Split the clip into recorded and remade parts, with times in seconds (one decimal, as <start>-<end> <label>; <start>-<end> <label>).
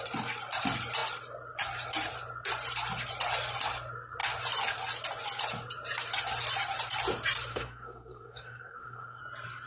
0.0-7.5 recorded; 7.5-9.2 remade; 9.2-9.7 recorded